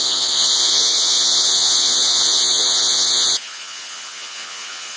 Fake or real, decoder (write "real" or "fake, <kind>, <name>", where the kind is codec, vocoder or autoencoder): fake, vocoder, Vocos